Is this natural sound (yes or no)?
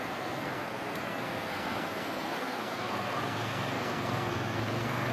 no